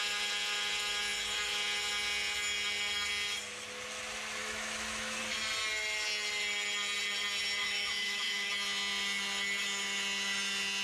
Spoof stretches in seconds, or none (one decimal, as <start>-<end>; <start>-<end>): 4.4-5.2; 7.6-8.5

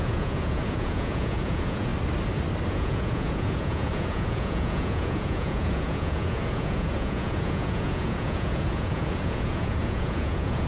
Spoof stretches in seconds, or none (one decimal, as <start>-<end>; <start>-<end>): 0.0-1.9; 2.7-10.7

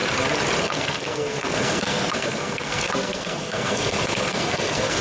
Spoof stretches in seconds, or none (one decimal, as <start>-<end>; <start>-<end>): 0.6-5.0

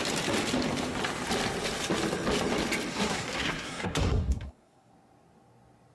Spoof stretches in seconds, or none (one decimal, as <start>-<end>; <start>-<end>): 2.9-4.9

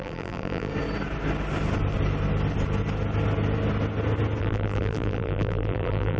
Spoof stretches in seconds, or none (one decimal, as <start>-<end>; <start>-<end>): 0.0-0.7; 4.4-6.2

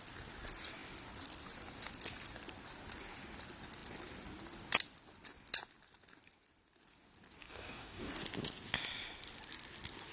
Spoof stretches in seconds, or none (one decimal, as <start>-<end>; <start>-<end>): 7.4-8.1

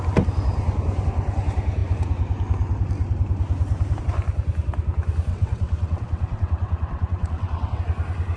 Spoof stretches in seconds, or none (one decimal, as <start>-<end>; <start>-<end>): 5.3-7.8